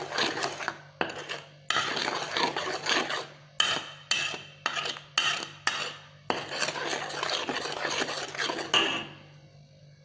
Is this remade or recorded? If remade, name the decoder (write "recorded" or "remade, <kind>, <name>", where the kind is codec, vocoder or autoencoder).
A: recorded